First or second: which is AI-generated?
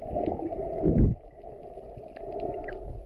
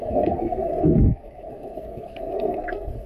second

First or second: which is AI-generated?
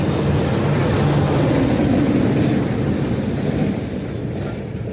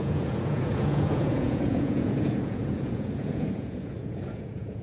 second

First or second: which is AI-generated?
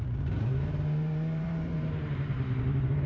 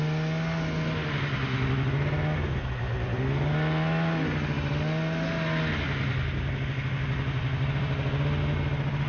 first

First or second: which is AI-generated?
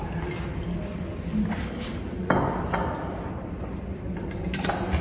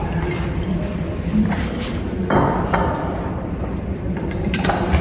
second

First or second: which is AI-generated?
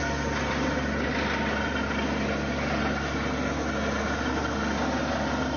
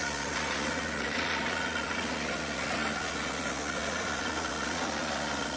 second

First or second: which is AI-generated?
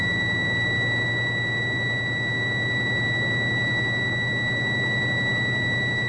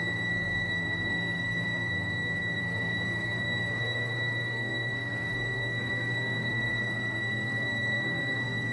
second